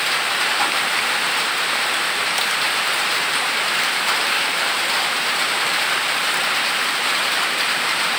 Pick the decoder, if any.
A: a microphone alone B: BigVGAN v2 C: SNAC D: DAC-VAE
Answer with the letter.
B